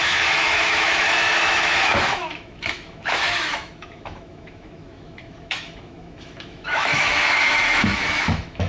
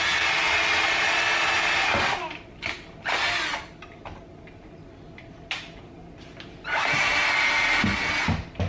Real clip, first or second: second